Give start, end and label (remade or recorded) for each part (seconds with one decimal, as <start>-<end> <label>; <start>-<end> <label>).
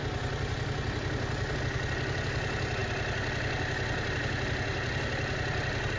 0.0-6.0 recorded